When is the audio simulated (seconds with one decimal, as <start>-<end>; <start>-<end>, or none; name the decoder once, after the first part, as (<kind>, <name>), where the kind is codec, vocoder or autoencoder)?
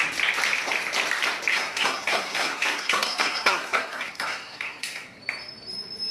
1.5-5.2 (codec, SNAC)